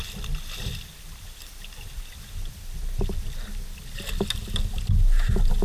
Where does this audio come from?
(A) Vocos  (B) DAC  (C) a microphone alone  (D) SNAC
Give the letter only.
C